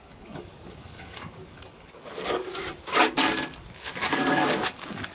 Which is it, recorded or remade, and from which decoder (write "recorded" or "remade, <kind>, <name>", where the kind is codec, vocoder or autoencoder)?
remade, codec, DAC